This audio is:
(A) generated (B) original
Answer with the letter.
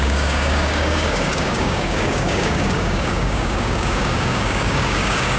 A